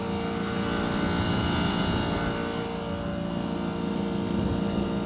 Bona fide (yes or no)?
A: yes